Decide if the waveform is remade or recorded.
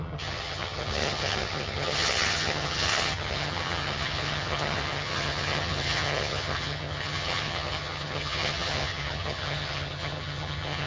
remade